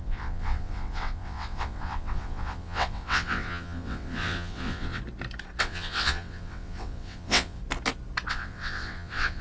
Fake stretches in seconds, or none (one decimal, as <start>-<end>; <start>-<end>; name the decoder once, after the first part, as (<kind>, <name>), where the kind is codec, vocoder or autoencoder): 0.0-5.0 (vocoder, WaveNeXt); 5.6-7.6; 8.3-9.4